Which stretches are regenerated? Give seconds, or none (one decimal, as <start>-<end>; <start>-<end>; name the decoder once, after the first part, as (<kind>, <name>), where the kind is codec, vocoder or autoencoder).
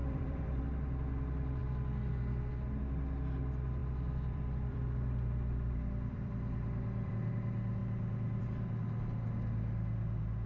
0.0-0.6 (vocoder, BigVGAN v2); 3.8-7.1